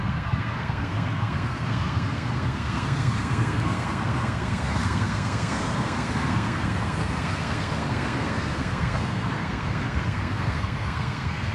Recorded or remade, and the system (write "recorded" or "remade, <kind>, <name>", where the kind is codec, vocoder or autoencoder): remade, codec, SNAC